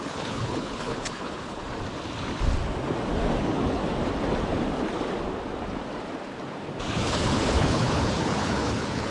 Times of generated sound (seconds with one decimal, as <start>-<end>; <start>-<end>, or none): 0.0-1.6; 3.4-3.8; 6.9-9.1